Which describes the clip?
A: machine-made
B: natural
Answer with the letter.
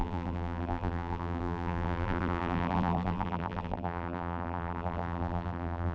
A